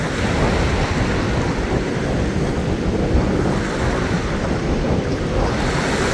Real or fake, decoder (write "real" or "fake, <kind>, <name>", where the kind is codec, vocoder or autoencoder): real